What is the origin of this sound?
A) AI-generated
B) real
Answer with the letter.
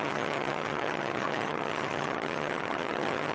A